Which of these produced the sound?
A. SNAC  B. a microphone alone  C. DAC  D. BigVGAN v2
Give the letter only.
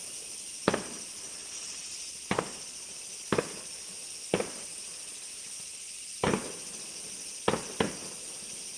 B